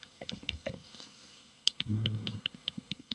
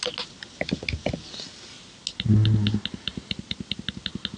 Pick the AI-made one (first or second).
first